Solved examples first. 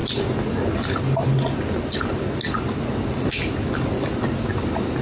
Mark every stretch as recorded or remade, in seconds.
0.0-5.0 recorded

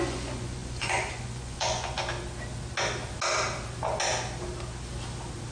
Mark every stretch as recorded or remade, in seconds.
0.0-2.0 remade; 2.0-5.5 recorded

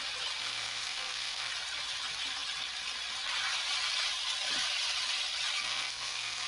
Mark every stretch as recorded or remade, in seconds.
0.0-0.4 recorded; 0.4-1.5 remade; 1.5-5.6 recorded; 5.6-6.5 remade

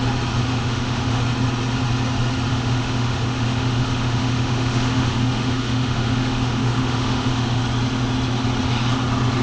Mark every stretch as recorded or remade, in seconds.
0.0-0.4 recorded; 0.4-1.2 remade; 1.2-2.5 recorded; 2.5-7.6 remade; 7.6-9.4 recorded

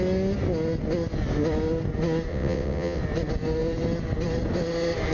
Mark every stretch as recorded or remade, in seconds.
0.0-2.3 recorded; 2.3-3.0 remade; 3.0-5.1 recorded